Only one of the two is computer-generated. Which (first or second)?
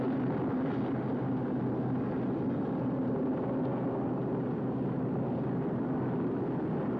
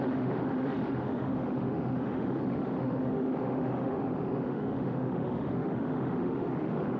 second